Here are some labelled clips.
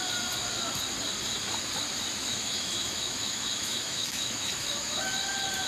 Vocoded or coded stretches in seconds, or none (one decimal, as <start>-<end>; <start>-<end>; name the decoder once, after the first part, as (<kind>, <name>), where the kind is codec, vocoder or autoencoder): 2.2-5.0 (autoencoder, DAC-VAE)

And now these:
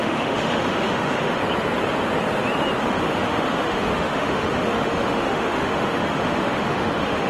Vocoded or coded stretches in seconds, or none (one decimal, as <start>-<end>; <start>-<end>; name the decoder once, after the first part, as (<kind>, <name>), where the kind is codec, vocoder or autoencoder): 0.0-1.4 (autoencoder, DAC-VAE); 2.8-7.3

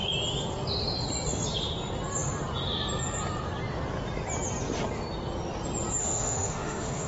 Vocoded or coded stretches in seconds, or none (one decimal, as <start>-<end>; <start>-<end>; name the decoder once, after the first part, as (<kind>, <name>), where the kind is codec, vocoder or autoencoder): 6.0-7.1 (autoencoder, DAC-VAE)

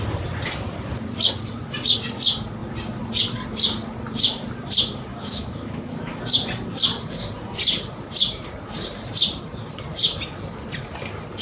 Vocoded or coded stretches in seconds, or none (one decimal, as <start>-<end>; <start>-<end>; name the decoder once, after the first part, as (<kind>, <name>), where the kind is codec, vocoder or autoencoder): 5.1-6.2 (autoencoder, DAC-VAE)

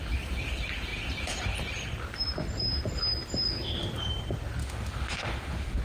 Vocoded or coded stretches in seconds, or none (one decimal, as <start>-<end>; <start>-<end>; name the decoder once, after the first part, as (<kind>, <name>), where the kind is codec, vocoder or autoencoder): 4.6-5.8 (autoencoder, DAC-VAE)